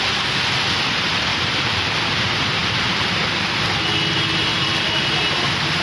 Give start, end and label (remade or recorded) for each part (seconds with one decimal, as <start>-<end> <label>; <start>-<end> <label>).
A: 0.0-1.3 recorded; 1.3-2.0 remade; 2.0-2.6 recorded; 2.6-3.2 remade; 3.2-4.5 recorded; 4.5-5.1 remade; 5.1-5.8 recorded